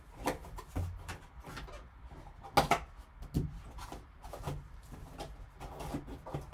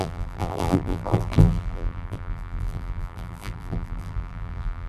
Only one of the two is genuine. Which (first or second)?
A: first